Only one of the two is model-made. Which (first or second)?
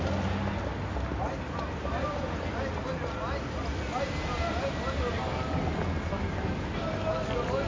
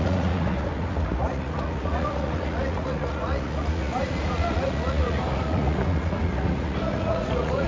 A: second